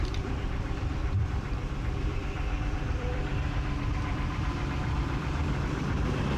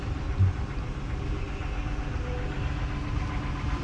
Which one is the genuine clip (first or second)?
second